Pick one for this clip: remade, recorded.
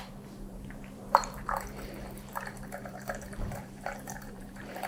remade